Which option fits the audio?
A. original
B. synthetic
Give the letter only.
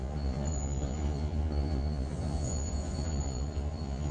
B